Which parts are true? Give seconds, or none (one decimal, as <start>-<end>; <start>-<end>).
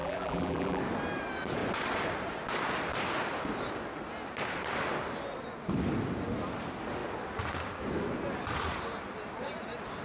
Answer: 0.8-10.0